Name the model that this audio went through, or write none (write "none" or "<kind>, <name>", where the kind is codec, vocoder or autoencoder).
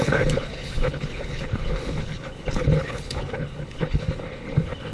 codec, HILCodec